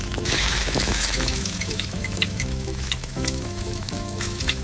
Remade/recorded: remade